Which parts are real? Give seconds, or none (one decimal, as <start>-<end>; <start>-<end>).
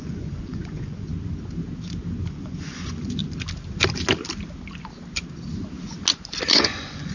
1.1-2.3; 3.2-6.5